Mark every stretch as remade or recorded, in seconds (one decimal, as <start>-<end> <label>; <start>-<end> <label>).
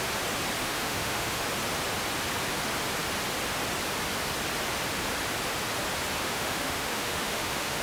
0.0-0.6 recorded; 0.6-1.4 remade; 1.4-6.2 recorded; 6.2-7.8 remade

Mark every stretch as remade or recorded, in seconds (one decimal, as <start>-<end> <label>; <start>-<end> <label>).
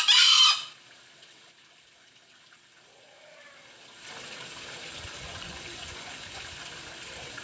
0.0-4.9 recorded; 4.9-6.4 remade; 6.4-7.4 recorded